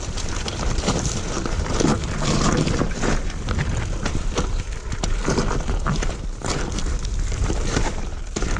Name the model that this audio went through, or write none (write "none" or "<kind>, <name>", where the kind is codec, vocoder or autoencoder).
vocoder, BigVGAN v2